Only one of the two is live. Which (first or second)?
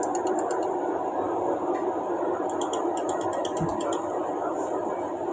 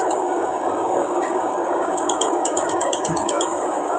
first